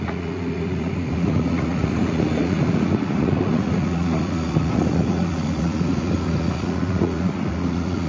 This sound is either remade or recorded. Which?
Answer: remade